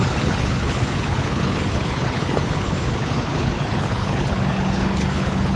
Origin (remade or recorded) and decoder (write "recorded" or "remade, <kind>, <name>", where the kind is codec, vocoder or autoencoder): remade, codec, HILCodec